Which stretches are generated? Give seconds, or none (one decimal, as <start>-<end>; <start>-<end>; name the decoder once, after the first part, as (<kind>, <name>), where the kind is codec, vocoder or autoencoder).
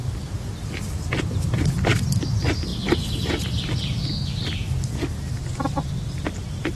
0.0-6.8 (vocoder, BigVGAN v2)